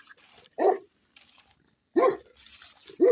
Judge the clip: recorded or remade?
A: recorded